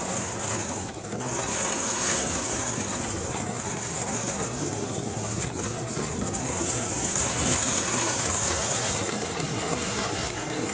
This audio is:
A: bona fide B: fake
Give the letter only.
B